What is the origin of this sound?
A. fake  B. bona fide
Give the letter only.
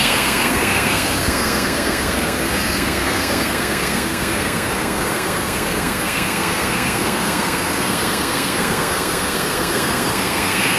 A